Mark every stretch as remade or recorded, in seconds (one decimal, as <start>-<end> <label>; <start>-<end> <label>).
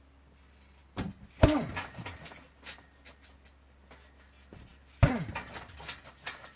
0.0-6.6 recorded